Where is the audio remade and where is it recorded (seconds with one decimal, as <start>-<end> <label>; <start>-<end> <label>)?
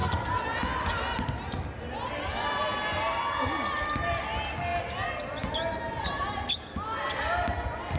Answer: 0.0-8.0 recorded